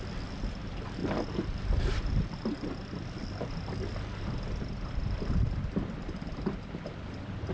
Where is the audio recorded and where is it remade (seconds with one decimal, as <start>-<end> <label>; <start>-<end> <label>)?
0.0-7.5 recorded